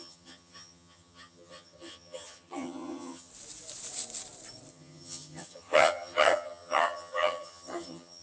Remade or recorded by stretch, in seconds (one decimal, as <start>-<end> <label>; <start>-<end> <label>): 0.0-3.3 remade; 3.3-4.7 recorded; 4.7-8.2 remade